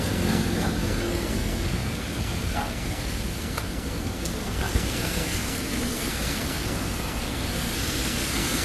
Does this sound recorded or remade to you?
remade